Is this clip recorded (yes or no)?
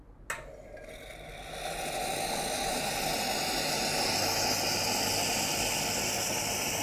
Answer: yes